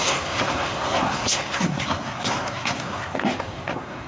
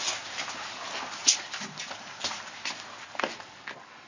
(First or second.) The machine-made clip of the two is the first